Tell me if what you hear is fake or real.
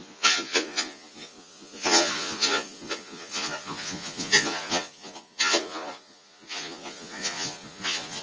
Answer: fake